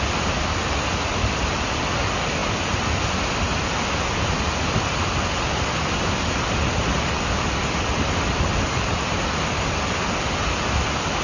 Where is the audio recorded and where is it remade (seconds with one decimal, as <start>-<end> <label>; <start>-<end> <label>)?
0.0-11.2 recorded